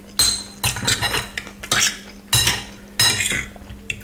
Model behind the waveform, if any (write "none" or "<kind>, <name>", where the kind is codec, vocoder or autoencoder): none